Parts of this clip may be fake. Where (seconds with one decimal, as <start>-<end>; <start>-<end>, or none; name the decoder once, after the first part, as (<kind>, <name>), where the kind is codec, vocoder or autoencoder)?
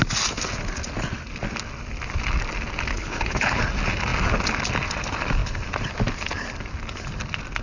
2.9-3.6 (codec, HILCodec)